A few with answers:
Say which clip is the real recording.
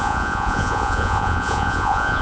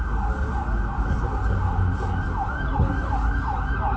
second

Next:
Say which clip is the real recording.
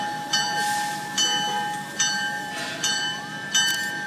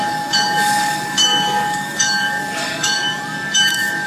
first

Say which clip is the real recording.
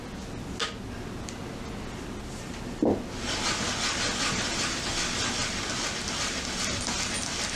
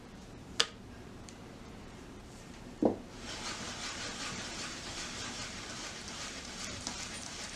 first